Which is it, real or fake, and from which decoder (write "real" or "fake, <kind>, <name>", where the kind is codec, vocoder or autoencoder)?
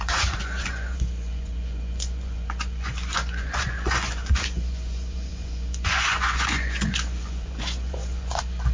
fake, vocoder, Vocos